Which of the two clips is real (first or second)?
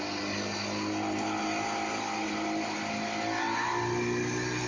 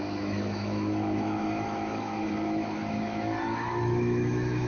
first